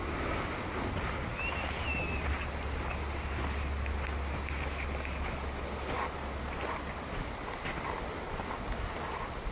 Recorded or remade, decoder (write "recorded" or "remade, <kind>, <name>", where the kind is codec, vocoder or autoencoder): recorded